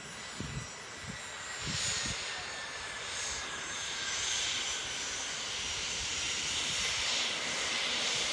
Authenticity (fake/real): real